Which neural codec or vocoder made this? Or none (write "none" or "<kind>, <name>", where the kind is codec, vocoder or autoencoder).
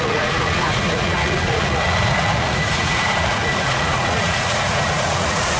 vocoder, Vocos